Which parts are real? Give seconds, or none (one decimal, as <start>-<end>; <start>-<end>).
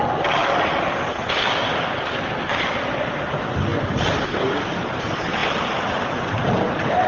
0.4-1.8